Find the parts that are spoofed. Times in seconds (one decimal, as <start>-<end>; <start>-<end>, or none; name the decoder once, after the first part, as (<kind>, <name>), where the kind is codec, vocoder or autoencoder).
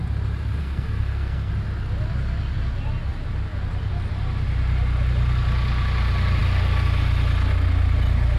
0.6-1.5 (codec, SNAC)